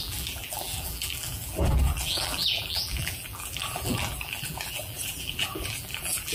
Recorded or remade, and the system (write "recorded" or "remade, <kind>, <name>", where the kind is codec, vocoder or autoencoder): remade, vocoder, BigVGAN v2